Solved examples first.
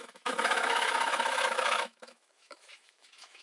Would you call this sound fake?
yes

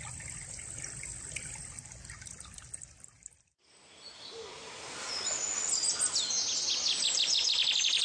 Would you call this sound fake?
no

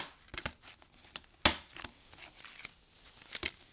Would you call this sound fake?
no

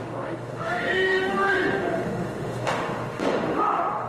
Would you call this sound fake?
yes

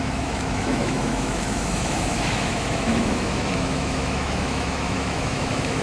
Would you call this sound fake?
yes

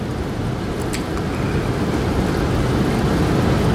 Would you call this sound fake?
no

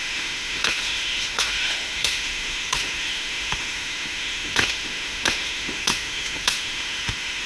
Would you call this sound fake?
yes